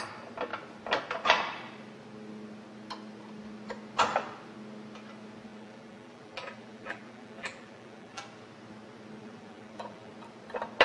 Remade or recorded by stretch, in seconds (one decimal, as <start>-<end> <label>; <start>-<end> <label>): 0.0-5.5 recorded; 5.5-8.2 remade; 8.2-9.2 recorded; 9.2-10.1 remade; 10.1-10.8 recorded